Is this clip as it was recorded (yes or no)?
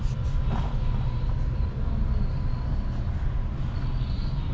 yes